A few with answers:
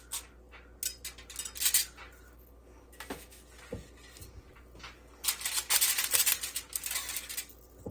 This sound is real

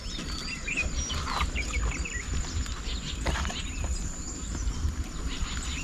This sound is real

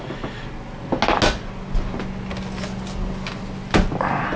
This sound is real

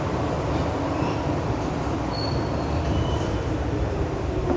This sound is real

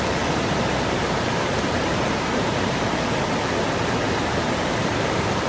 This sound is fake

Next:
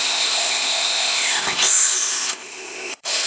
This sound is fake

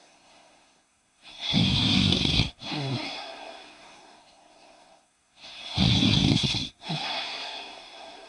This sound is fake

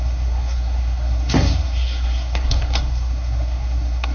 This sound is fake